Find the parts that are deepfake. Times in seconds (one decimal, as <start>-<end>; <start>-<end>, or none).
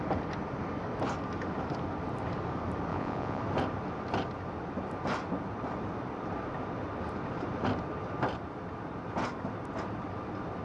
2.9-3.4